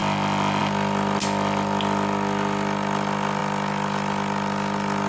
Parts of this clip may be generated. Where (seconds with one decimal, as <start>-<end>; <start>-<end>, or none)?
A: none

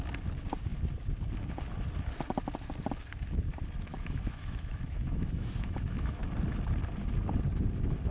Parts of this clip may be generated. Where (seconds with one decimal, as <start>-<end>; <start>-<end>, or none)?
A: 3.9-6.2

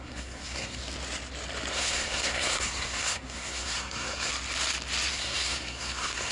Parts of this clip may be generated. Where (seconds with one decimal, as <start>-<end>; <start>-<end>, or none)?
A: 0.0-0.8; 1.7-4.3; 5.1-6.3

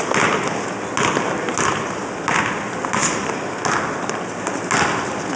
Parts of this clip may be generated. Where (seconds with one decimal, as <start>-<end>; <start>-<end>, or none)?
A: none

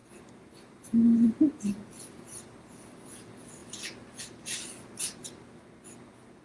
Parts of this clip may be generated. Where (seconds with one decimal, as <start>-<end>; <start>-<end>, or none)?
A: 0.0-3.1

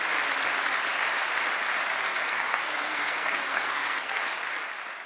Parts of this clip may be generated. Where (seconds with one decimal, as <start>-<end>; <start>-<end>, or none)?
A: 2.1-4.2

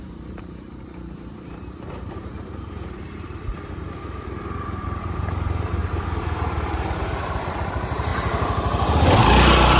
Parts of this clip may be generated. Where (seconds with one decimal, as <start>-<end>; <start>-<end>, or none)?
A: 0.0-3.5; 5.2-5.8; 7.2-8.1; 9.2-9.8

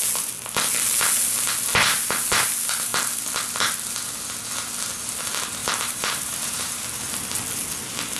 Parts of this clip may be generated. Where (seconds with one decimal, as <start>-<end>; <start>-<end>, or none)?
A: 5.6-6.8